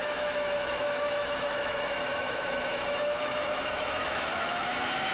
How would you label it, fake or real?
fake